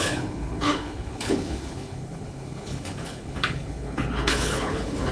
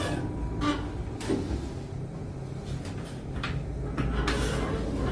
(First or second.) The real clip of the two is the second